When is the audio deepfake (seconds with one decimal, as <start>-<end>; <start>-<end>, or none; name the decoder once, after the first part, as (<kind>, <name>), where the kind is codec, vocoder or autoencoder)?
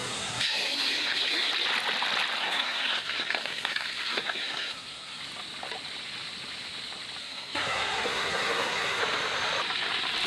0.0-1.5 (codec, SNAC); 2.4-5.2; 7.2-9.0